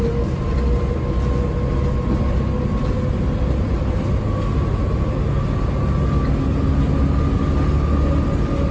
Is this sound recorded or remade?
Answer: recorded